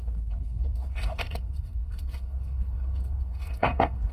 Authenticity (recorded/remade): remade